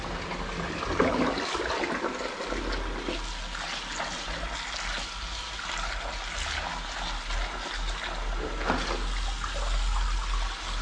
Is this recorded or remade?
recorded